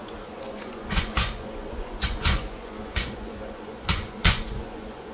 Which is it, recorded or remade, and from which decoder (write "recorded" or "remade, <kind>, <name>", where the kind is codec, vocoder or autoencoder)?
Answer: remade, vocoder, Vocos